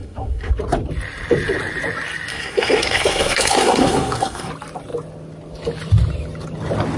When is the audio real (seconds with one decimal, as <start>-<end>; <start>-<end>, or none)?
0.5-2.3; 4.5-7.0